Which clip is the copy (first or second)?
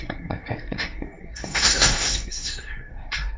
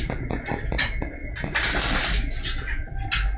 first